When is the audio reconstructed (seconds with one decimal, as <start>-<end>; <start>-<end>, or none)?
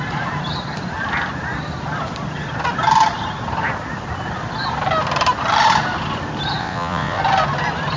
6.6-7.2